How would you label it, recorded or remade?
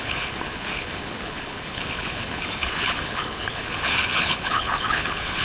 remade